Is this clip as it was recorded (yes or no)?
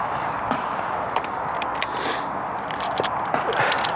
yes